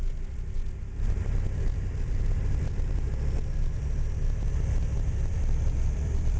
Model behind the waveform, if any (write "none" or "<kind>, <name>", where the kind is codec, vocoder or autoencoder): vocoder, BigVGAN v2